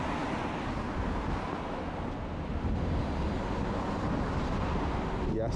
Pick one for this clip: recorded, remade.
recorded